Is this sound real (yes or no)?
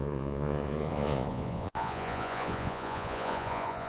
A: no